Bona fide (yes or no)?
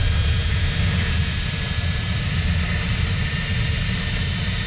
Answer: yes